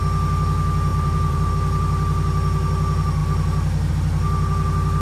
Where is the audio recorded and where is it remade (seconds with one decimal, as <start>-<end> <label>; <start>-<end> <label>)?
0.0-0.9 recorded; 0.9-1.5 remade; 1.5-5.0 recorded